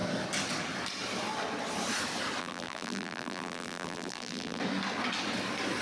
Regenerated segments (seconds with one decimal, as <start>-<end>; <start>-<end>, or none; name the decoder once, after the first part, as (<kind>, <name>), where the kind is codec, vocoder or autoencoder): 2.4-4.6 (vocoder, BigVGAN v2)